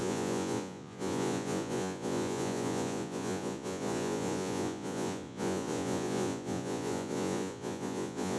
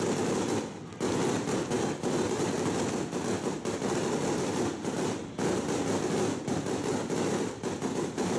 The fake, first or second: first